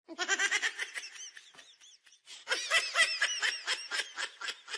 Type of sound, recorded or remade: recorded